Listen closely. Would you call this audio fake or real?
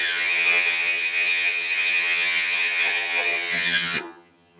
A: fake